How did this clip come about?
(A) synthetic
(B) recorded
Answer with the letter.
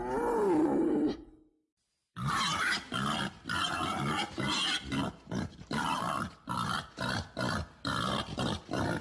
B